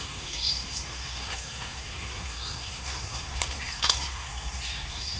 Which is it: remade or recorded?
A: remade